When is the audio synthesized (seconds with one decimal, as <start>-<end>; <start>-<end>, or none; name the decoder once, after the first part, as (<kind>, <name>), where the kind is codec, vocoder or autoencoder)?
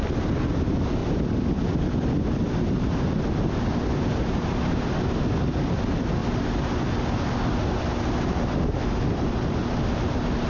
none